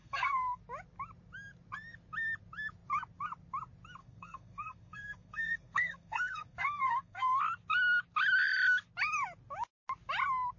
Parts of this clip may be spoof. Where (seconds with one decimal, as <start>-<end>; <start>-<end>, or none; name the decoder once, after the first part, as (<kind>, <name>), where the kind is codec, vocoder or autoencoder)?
0.0-0.6 (codec, SNAC); 4.0-7.4